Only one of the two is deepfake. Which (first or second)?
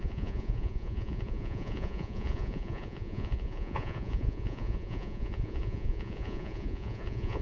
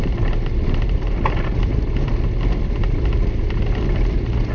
first